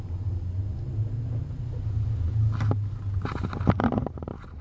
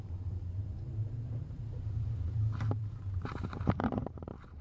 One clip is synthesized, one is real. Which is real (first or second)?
first